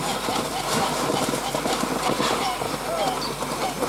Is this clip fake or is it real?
real